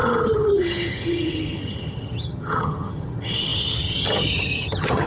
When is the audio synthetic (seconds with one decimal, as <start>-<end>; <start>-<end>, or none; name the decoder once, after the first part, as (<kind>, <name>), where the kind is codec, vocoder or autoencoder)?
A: 0.0-5.1 (vocoder, HiFi-GAN)